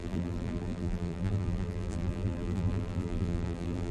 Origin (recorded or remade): remade